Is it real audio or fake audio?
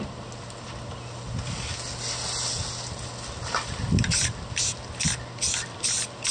real